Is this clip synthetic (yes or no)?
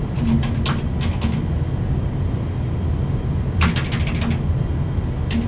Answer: no